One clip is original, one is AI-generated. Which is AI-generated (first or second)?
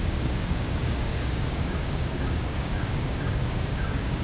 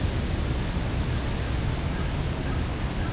first